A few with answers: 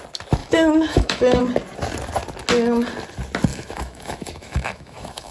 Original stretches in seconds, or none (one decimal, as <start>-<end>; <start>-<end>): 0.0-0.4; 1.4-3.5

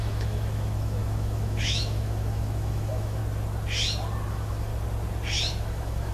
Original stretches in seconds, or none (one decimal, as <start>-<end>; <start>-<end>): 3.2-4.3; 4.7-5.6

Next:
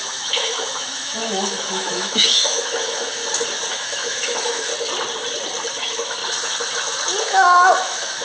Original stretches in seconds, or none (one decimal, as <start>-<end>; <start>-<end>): 3.2-3.7; 4.7-5.7; 6.2-7.2

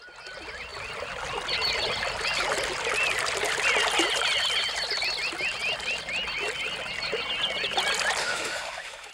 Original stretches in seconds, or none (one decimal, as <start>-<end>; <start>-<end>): 0.0-8.2

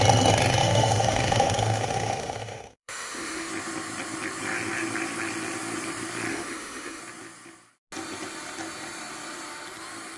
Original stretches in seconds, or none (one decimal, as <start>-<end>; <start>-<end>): 0.0-0.6; 3.5-6.3; 7.0-10.2